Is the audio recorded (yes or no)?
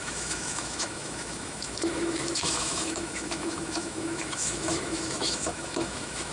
no